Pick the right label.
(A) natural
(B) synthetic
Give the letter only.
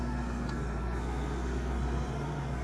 B